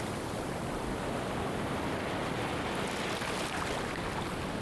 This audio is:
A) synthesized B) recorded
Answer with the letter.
B